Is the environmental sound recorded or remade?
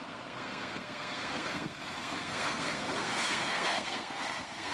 remade